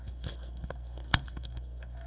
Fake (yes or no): yes